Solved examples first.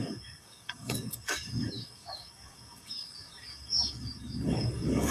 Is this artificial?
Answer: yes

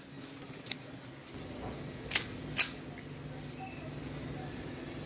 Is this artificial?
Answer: no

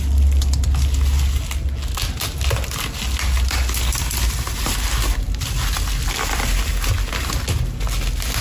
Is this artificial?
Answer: no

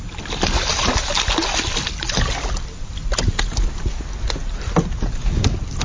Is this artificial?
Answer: no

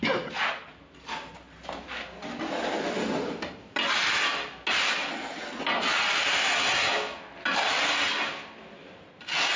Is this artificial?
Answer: no